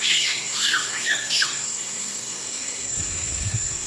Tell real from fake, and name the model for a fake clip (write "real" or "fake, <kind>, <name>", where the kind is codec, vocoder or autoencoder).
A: fake, codec, SNAC